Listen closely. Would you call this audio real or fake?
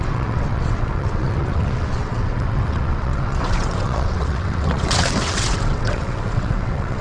fake